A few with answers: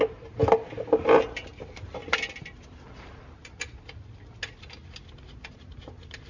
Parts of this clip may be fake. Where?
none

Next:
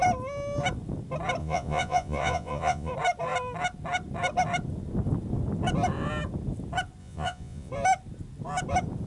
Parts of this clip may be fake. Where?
1.4-2.9; 7.0-7.7

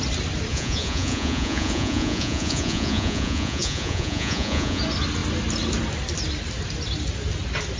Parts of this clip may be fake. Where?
0.5-4.8

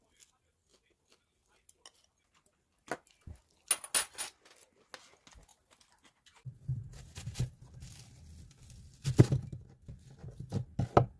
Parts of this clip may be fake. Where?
none

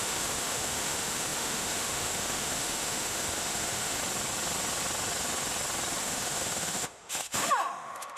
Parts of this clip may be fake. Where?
0.0-4.0; 6.0-8.2

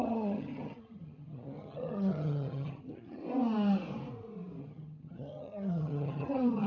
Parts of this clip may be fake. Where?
0.0-3.2; 4.6-6.7

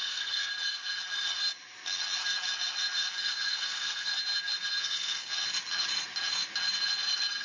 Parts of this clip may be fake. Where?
0.0-0.5; 3.3-4.1; 4.8-5.3